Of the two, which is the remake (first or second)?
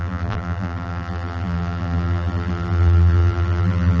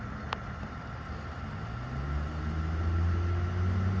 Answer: first